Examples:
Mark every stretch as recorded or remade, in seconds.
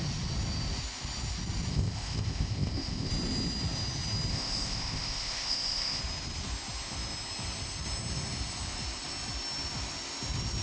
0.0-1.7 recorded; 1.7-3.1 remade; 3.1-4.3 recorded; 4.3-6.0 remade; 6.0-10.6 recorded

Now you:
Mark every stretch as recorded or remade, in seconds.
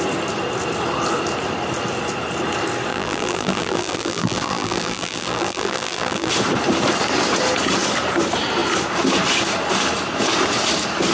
0.0-2.9 recorded; 2.9-6.3 remade; 6.3-11.1 recorded